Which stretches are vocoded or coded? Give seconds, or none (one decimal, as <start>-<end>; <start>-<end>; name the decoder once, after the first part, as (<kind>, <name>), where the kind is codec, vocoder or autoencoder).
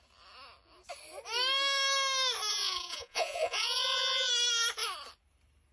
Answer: 2.5-4.3 (vocoder, Vocos)